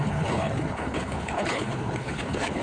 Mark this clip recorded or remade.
remade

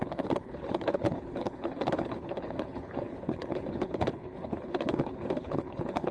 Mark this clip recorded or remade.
remade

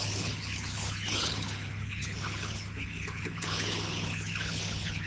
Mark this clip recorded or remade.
remade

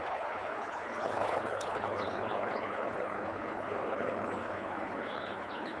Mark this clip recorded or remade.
remade